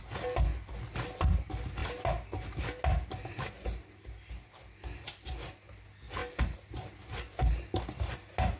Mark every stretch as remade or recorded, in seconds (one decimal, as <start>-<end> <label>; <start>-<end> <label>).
0.0-8.6 recorded